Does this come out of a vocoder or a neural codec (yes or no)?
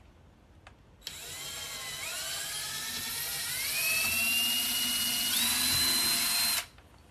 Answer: no